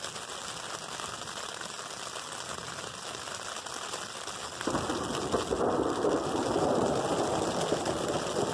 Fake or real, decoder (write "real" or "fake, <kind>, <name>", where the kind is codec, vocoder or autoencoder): real